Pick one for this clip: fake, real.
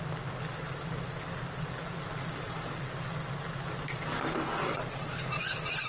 real